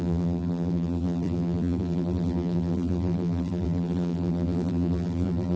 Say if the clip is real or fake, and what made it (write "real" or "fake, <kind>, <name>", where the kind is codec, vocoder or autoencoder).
fake, vocoder, BigVGAN v2